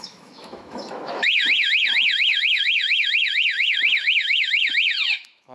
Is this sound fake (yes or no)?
yes